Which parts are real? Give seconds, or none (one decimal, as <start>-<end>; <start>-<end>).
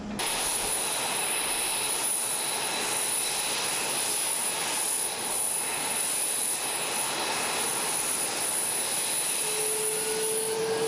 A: 0.0-10.9